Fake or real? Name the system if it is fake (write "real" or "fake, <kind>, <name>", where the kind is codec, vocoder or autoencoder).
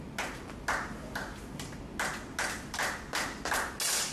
real